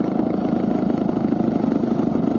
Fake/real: real